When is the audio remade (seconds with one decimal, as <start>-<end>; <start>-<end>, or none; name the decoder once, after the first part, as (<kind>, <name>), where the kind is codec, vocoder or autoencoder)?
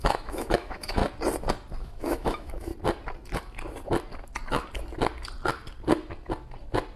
0.0-1.0 (autoencoder, DAC-VAE); 1.8-2.7